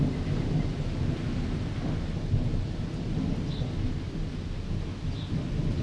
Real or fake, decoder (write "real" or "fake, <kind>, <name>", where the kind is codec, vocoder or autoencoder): real